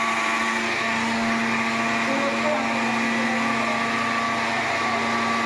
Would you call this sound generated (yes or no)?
no